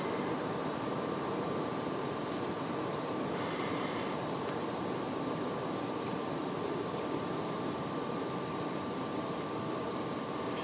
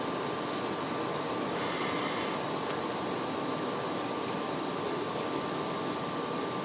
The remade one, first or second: first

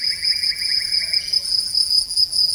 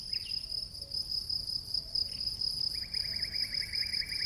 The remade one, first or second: first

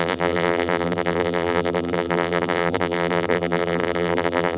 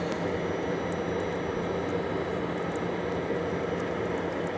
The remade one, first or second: first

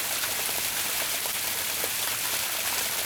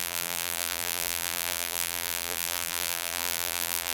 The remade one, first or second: second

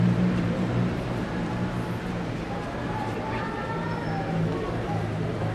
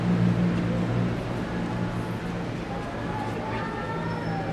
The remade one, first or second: first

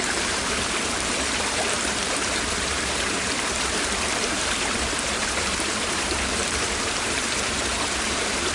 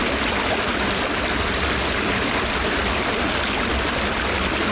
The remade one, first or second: first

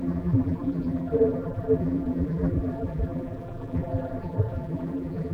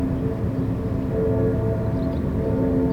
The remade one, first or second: first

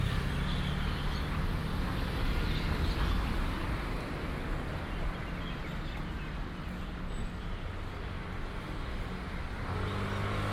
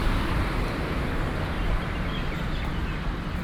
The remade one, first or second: second